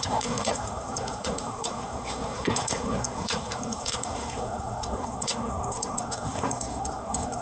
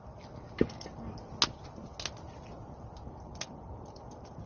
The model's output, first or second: first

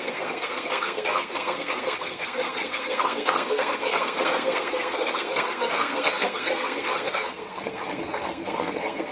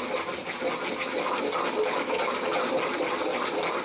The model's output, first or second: first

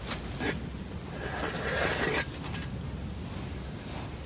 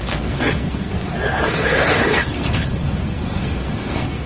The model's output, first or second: second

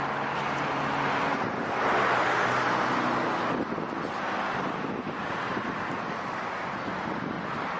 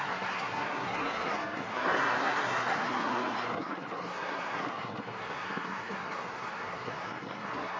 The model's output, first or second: second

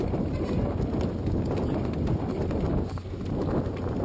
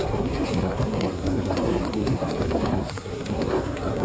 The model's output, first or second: second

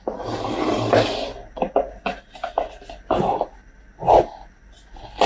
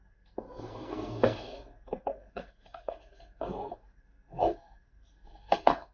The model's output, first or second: second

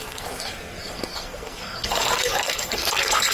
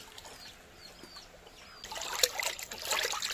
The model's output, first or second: first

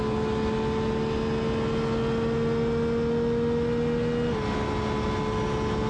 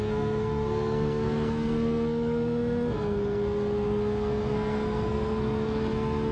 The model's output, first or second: second